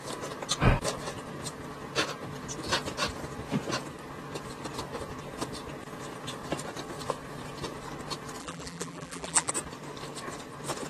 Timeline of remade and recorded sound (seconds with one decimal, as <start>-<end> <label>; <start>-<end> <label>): 0.0-8.4 recorded; 8.4-9.5 remade; 9.5-10.9 recorded